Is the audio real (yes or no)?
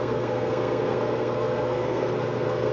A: no